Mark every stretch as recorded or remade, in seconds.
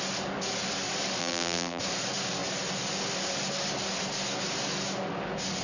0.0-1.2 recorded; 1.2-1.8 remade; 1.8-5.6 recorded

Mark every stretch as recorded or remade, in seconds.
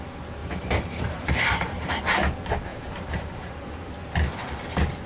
0.0-0.4 recorded; 0.4-2.0 remade; 2.0-2.7 recorded; 2.7-3.9 remade; 3.9-5.1 recorded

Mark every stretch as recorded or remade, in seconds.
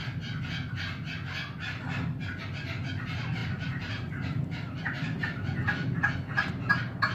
0.0-3.4 recorded; 3.4-4.8 remade; 4.8-7.1 recorded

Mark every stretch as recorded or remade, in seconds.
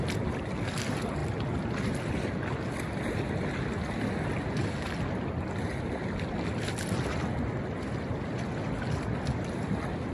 0.0-10.1 recorded